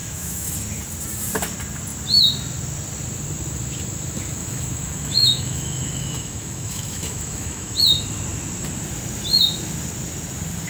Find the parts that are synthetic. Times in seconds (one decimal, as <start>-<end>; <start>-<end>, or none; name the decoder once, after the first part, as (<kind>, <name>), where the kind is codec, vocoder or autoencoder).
0.0-0.5 (autoencoder, DAC-VAE); 4.4-7.8